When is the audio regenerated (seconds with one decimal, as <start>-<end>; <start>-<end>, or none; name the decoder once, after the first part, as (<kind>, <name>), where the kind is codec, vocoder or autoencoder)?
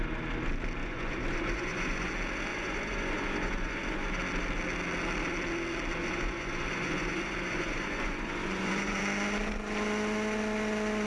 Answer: 0.8-2.1 (vocoder, Vocos); 2.5-4.1; 6.0-9.0